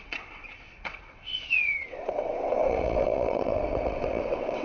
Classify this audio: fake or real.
fake